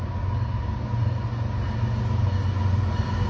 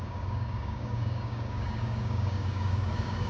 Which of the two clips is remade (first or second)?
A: second